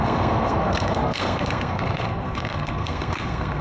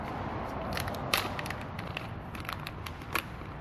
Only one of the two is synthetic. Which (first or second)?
first